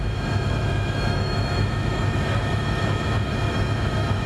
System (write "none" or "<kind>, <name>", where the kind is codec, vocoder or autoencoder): autoencoder, DAC-VAE